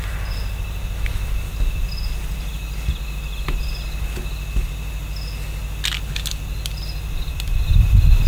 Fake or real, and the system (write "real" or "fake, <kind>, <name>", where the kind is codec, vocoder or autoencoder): real